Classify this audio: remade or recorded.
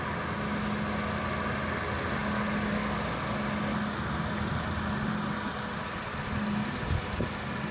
recorded